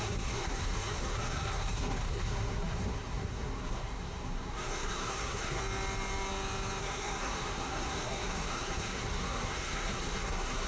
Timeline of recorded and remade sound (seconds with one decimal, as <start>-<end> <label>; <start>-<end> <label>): 0.0-5.6 remade; 5.6-6.8 recorded; 6.8-10.7 remade